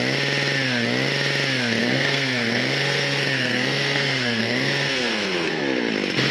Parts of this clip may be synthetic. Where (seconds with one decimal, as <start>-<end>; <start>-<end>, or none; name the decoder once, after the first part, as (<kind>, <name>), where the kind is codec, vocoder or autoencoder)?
1.8-5.6 (codec, SNAC)